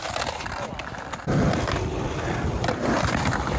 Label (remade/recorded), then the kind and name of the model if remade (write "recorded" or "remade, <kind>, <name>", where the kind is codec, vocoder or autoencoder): recorded